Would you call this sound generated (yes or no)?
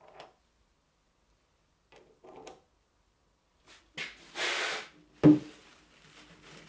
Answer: no